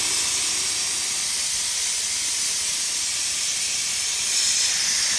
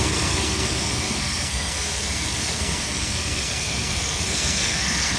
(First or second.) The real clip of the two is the first